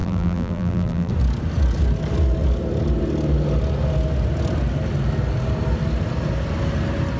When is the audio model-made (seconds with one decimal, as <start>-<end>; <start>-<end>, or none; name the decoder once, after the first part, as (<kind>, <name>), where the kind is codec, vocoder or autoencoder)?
0.0-1.1 (vocoder, BigVGAN v2)